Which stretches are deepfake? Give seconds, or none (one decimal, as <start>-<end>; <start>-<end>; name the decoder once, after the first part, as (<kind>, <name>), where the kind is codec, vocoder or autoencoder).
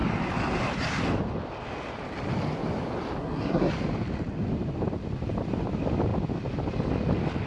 3.2-3.7 (codec, SNAC)